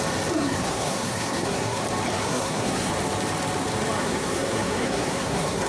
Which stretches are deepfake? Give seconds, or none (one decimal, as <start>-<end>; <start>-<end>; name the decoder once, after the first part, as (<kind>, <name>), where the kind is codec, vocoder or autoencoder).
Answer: 0.4-1.8 (codec, SNAC); 2.2-2.9; 4.0-5.7